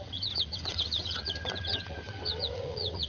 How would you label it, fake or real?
fake